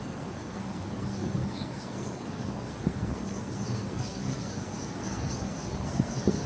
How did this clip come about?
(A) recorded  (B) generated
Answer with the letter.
B